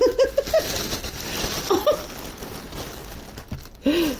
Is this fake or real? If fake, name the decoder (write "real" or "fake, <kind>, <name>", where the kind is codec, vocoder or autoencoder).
real